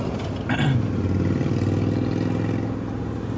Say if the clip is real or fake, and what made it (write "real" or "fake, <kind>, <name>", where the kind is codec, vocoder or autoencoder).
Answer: real